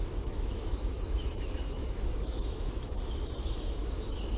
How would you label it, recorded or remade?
remade